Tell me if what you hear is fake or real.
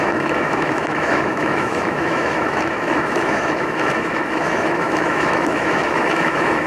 fake